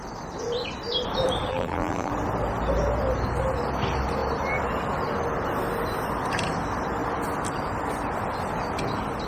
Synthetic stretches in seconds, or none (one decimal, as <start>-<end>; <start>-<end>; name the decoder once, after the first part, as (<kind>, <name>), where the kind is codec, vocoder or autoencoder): 1.5-2.1 (vocoder, BigVGAN v2)